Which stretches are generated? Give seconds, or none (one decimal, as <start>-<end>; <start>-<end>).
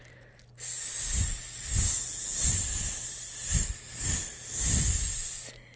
none